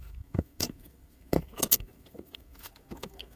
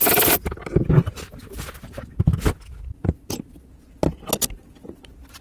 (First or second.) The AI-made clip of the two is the first